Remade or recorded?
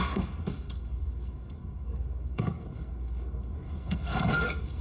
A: remade